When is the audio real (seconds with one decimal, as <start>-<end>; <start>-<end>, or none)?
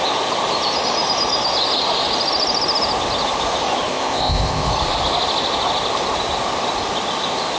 0.0-3.9; 4.7-7.6